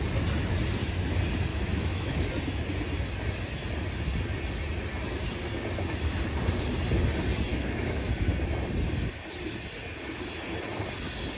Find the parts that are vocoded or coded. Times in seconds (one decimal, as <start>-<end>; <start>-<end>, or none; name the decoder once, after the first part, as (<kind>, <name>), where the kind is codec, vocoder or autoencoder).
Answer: 1.5-2.3 (autoencoder, DAC-VAE); 7.5-8.1